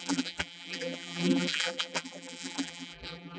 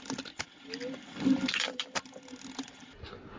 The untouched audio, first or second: second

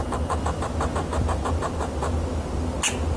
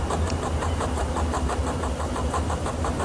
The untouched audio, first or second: first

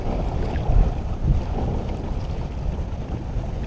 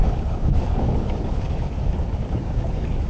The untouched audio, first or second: first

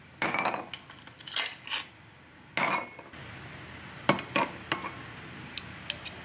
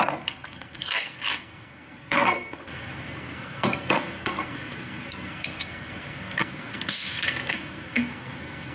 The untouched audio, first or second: first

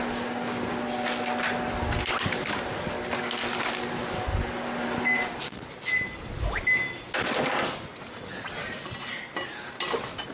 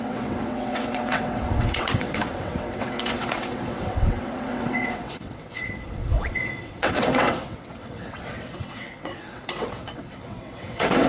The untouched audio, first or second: first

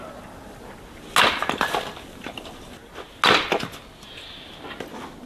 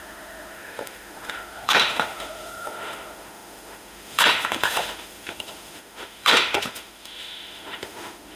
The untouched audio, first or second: first